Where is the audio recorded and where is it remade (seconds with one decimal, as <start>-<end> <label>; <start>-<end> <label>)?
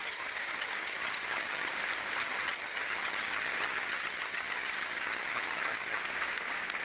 0.0-1.7 remade; 1.7-2.2 recorded; 2.2-6.0 remade; 6.0-6.8 recorded